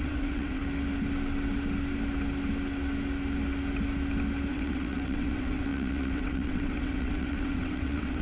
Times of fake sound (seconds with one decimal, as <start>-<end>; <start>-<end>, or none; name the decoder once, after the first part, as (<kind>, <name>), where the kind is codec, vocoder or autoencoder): 0.0-0.6 (vocoder, WaveNeXt); 4.5-8.2